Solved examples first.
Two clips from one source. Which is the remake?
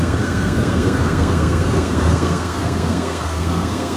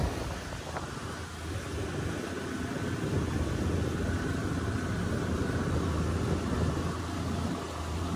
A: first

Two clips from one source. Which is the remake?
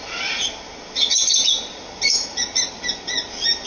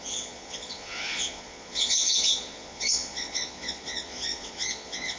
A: second